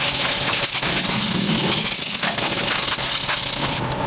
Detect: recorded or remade recorded